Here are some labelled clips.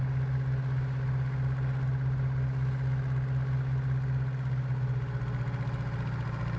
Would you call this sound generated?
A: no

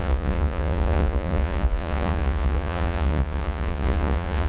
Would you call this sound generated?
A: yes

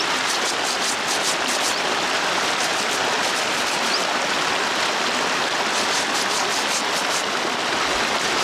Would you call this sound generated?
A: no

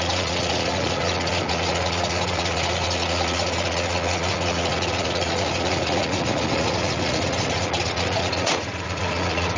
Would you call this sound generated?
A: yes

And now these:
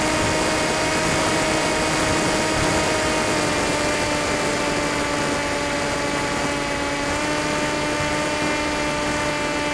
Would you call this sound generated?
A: no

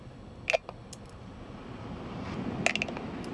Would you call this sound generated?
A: no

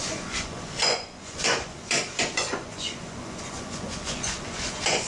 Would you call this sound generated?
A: yes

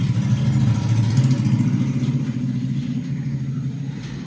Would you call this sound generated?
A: no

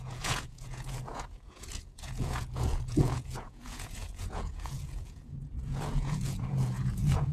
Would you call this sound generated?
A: yes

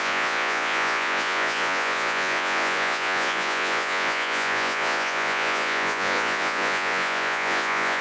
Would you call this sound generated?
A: yes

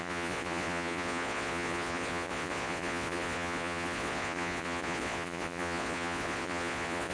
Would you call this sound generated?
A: yes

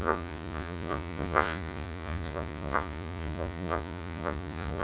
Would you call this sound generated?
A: yes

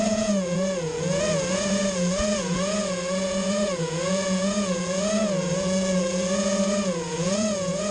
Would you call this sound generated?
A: yes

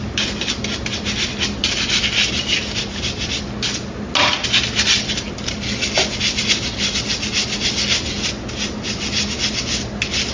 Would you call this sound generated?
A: no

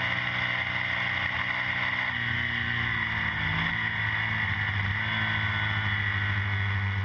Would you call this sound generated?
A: no